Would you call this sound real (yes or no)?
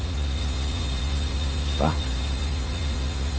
no